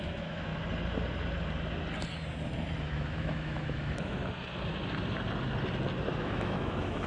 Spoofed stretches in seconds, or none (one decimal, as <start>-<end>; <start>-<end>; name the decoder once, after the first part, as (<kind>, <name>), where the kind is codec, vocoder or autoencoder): 0.0-0.5 (autoencoder, DAC-VAE); 2.8-4.2; 6.1-7.1